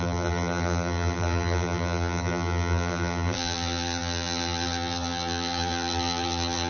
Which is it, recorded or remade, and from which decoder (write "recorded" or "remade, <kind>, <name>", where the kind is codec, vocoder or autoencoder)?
remade, vocoder, BigVGAN v2